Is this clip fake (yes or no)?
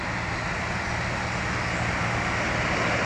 no